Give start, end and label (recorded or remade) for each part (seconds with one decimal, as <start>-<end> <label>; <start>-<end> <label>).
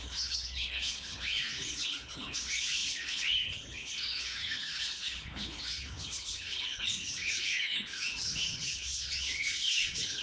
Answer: 0.0-10.2 remade